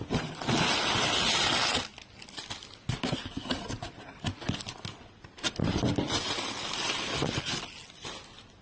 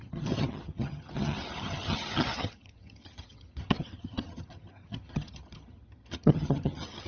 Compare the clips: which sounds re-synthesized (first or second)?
second